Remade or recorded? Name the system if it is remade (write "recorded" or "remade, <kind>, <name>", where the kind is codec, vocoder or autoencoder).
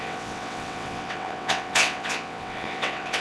remade, vocoder, WaveNeXt